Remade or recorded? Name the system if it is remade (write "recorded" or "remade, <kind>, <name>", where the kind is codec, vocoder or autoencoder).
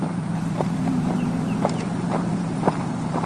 remade, vocoder, BigVGAN v2